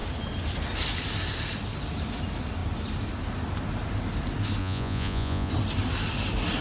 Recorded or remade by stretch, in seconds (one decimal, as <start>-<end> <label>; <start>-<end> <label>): 0.0-4.6 recorded; 4.6-5.5 remade; 5.5-6.6 recorded